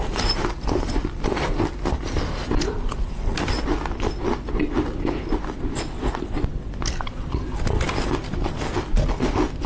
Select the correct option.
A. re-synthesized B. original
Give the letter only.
B